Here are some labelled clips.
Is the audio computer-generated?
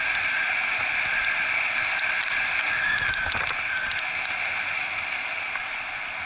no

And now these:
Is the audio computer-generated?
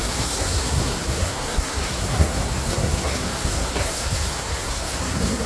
yes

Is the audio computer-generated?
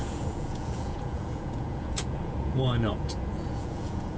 yes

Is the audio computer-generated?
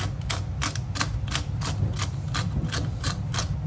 no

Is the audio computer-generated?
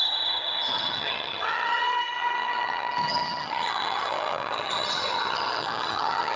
yes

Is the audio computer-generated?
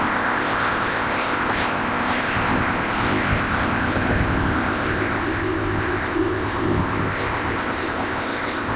yes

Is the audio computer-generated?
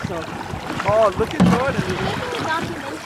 no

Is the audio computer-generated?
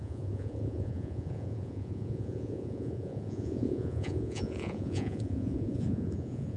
yes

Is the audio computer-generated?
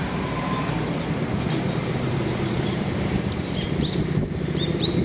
yes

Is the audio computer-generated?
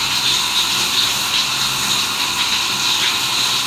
no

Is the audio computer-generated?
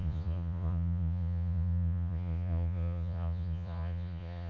yes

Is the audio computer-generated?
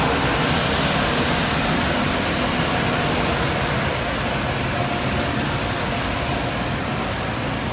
no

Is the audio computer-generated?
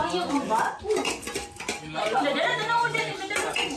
no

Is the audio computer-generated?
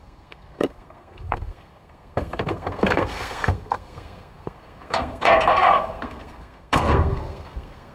yes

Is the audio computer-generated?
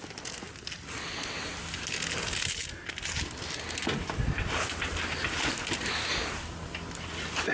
no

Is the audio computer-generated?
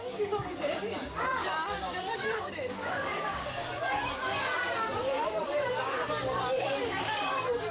yes